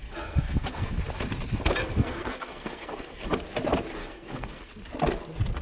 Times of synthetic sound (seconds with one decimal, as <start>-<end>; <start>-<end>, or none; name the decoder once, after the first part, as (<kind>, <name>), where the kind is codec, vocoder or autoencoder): 0.0-1.0 (codec, SNAC); 1.8-3.3; 4.0-4.7